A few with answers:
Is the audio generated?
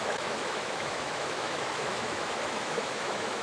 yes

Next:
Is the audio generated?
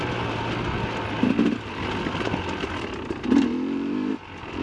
no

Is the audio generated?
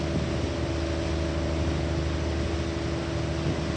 no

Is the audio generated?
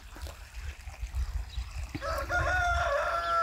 no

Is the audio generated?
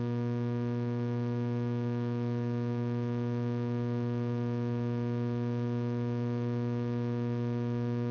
no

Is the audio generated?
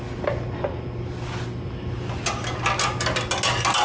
no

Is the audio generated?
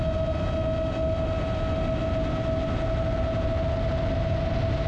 no